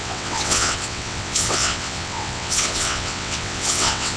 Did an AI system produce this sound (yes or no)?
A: yes